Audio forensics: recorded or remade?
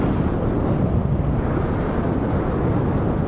recorded